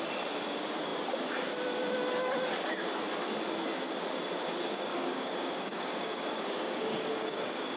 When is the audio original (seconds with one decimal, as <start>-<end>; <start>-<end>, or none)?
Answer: 0.0-4.9